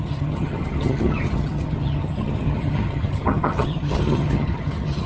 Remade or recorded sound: remade